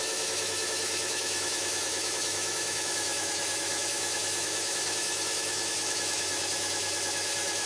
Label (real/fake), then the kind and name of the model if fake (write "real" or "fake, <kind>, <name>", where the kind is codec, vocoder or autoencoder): fake, autoencoder, DAC-VAE